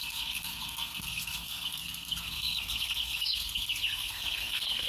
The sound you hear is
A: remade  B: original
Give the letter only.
A